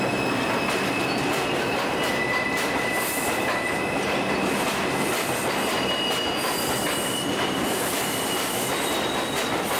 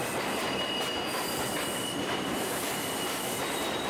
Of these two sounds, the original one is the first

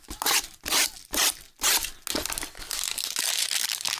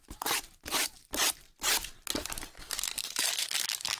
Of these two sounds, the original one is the first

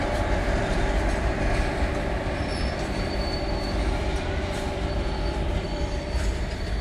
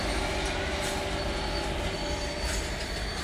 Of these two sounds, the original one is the second